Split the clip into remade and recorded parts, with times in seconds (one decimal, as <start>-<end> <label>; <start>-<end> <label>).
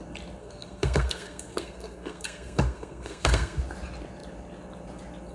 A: 0.0-0.4 recorded; 0.4-3.6 remade; 3.6-5.3 recorded